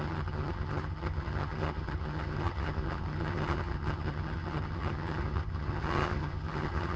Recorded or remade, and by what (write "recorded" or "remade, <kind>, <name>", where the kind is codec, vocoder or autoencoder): remade, vocoder, HiFi-GAN